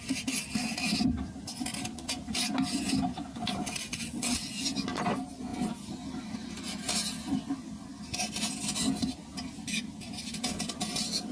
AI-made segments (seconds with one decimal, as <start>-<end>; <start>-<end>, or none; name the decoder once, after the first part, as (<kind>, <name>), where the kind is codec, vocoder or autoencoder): 3.9-4.5 (vocoder, WaveNeXt)